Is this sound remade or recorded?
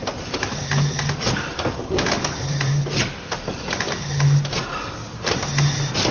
recorded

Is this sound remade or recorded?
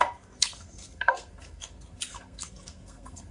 remade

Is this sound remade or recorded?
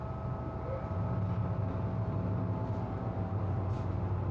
recorded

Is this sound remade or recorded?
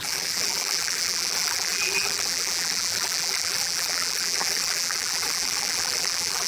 remade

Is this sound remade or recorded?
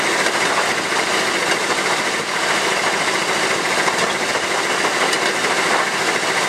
recorded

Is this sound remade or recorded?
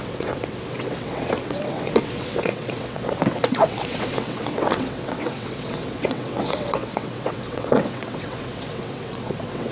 remade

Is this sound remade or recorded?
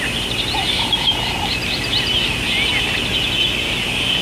recorded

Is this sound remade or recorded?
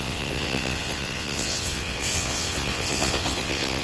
remade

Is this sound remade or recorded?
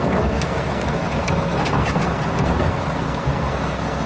remade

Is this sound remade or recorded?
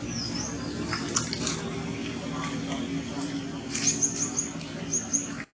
recorded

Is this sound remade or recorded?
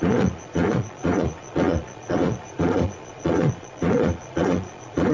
remade